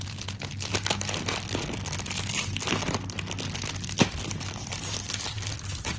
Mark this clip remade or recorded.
recorded